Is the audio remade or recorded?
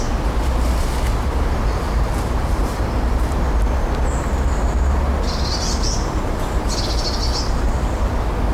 recorded